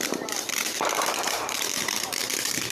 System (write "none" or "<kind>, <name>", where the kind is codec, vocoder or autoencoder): vocoder, BigVGAN v2